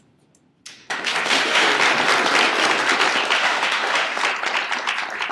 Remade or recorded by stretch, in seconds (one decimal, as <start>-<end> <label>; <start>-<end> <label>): 0.0-0.8 recorded; 0.8-1.7 remade; 1.7-3.4 recorded; 3.4-4.2 remade; 4.2-5.3 recorded